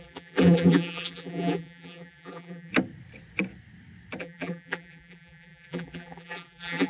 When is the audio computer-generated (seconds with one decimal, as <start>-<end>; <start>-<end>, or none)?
0.0-2.7; 4.2-6.9